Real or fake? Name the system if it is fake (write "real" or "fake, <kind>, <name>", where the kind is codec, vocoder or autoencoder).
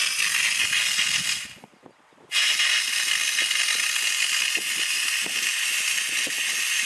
real